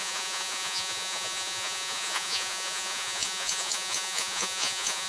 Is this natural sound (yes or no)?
no